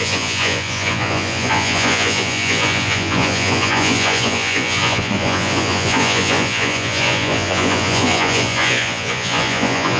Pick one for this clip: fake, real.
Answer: fake